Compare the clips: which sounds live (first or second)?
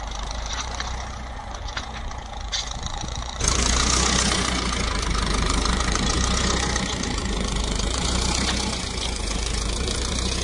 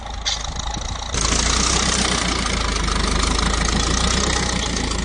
second